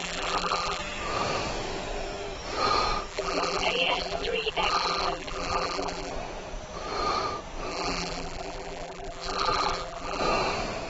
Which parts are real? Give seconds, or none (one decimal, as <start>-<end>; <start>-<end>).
0.8-3.1; 6.1-7.7; 10.2-10.9